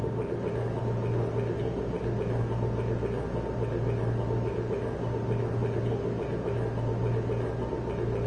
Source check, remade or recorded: recorded